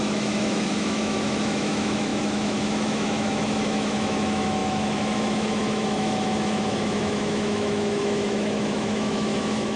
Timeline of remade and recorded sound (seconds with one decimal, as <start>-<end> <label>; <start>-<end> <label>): 0.0-9.8 remade